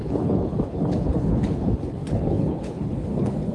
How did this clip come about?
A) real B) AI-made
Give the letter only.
B